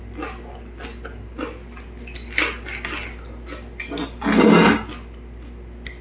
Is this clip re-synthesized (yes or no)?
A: no